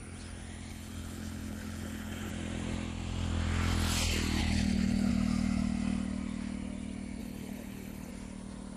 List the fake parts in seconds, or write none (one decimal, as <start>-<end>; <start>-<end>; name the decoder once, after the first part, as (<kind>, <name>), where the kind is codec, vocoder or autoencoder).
0.7-2.3 (codec, HILCodec); 4.4-5.1; 7.2-8.1

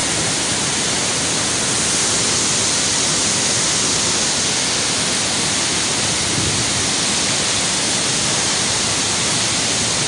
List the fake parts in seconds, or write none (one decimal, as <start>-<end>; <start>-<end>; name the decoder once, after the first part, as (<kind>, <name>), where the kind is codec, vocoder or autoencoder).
none

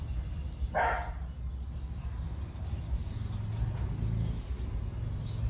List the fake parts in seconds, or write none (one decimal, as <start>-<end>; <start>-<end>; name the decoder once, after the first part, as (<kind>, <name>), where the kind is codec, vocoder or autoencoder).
none

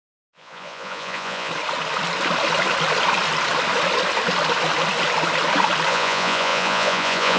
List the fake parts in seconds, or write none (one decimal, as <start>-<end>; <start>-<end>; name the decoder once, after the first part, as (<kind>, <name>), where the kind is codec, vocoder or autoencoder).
0.0-1.5 (vocoder, Vocos); 5.9-7.4

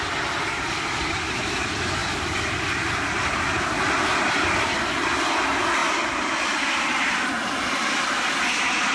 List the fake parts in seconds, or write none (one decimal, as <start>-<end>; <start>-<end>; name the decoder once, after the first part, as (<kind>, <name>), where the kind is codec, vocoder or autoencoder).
none

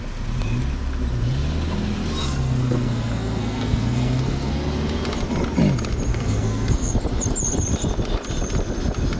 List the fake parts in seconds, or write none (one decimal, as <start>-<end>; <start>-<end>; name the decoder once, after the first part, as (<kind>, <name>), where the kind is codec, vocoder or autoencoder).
2.2-4.5 (codec, SNAC); 6.1-6.9